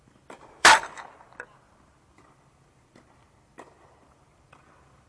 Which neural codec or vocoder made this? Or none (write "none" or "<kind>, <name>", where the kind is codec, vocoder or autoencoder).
vocoder, BigVGAN v2